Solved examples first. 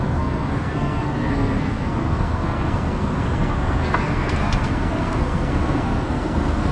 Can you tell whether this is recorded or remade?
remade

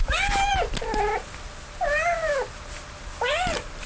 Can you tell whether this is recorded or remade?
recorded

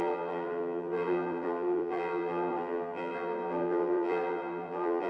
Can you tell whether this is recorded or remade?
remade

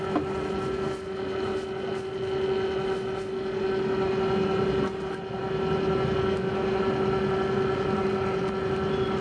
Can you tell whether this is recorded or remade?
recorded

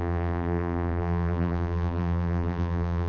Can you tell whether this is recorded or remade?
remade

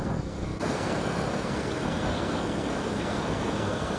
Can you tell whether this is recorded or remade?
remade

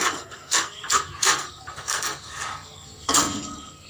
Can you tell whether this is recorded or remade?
remade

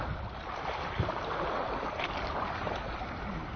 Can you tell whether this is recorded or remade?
recorded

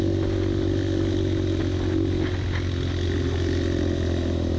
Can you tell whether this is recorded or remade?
recorded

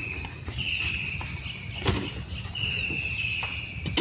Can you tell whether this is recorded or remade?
recorded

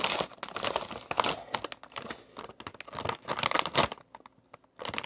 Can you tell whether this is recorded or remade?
recorded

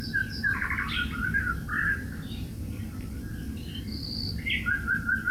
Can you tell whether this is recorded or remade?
remade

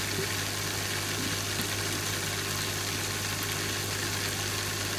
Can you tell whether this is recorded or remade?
recorded